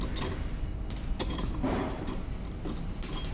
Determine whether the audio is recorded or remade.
recorded